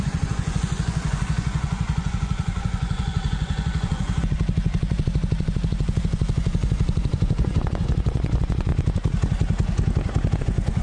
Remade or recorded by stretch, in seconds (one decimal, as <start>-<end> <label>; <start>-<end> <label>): 0.0-8.7 remade; 8.7-10.4 recorded; 10.4-10.8 remade